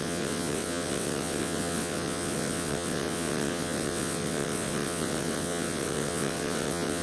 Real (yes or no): no